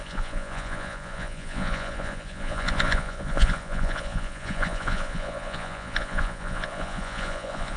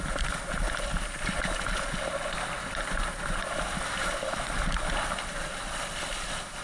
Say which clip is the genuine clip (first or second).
second